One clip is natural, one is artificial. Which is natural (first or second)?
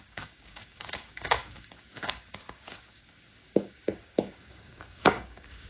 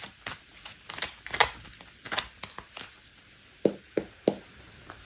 second